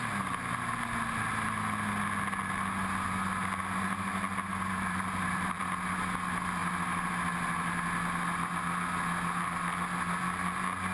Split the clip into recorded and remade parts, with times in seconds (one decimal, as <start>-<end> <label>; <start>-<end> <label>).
0.0-4.5 recorded; 4.5-5.6 remade; 5.6-10.9 recorded